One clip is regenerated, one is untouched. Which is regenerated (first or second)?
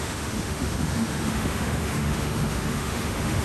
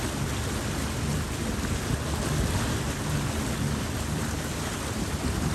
first